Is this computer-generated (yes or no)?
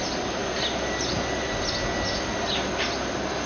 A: no